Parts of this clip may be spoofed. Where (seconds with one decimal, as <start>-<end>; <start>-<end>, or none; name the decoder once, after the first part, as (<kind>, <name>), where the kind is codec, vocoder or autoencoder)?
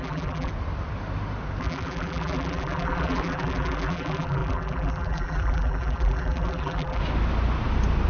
0.0-0.5 (vocoder, BigVGAN v2); 1.6-7.0